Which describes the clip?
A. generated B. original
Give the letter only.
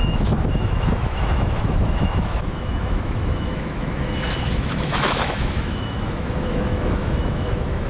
A